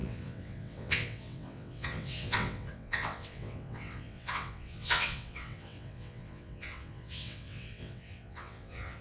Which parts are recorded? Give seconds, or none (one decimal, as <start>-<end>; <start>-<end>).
none